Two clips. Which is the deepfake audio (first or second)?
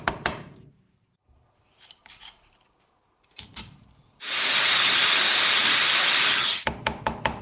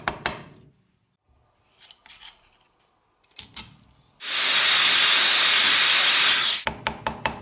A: first